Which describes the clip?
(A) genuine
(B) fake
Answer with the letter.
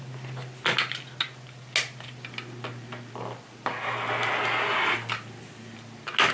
A